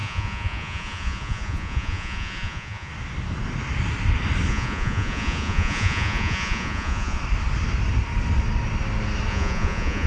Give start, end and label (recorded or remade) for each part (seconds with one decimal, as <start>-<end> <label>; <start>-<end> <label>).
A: 0.0-2.9 remade; 2.9-4.5 recorded; 4.5-7.2 remade; 7.2-9.3 recorded; 9.3-10.1 remade